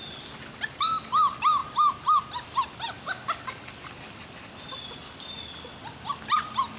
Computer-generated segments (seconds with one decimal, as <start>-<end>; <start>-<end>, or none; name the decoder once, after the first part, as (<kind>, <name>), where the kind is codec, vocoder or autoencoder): none